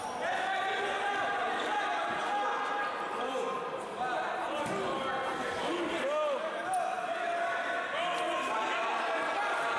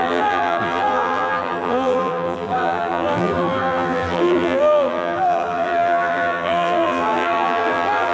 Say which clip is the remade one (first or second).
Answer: second